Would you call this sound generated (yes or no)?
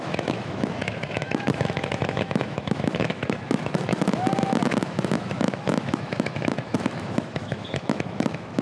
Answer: yes